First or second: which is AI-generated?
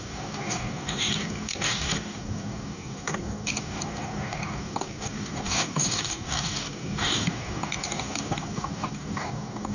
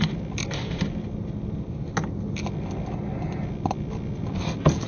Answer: first